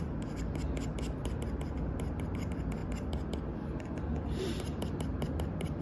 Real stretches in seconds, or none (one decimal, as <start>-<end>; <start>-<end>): 0.0-5.8